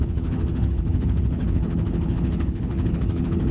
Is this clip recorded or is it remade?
remade